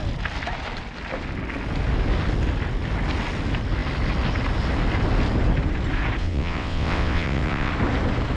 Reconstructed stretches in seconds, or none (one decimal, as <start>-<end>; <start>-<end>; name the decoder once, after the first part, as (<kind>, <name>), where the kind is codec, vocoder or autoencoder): 6.2-7.7 (vocoder, WaveNeXt)